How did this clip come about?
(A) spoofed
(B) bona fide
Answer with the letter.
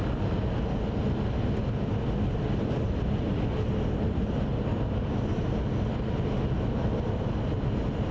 B